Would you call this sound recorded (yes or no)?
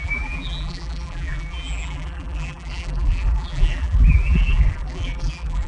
no